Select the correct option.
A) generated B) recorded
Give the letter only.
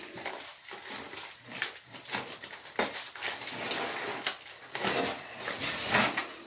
B